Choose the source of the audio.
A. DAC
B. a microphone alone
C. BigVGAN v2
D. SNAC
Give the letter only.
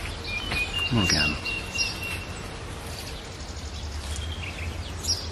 B